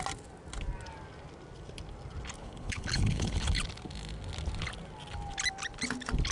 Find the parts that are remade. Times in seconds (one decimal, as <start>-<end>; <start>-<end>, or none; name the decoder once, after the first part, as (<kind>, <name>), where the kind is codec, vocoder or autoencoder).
2.4-3.6 (codec, HILCodec)